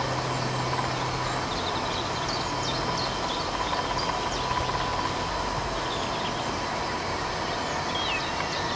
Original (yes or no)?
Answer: yes